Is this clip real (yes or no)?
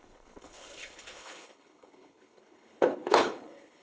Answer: no